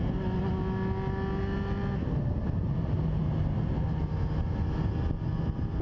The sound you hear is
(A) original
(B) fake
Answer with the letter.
A